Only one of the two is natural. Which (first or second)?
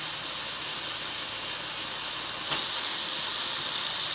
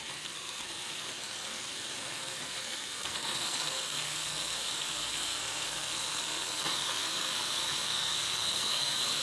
first